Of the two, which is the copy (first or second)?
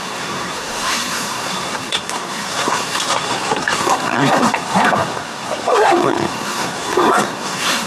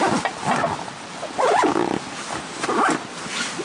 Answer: first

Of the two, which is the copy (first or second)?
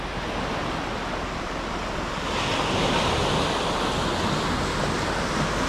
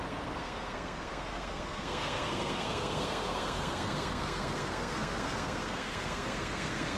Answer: second